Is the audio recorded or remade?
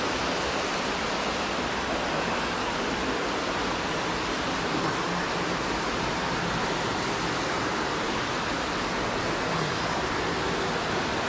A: recorded